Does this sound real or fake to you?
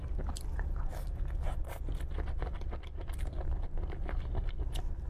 real